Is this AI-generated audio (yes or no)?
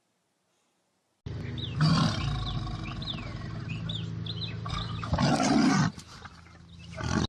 no